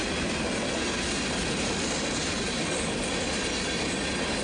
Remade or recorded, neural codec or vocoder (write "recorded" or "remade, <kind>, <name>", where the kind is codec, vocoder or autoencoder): recorded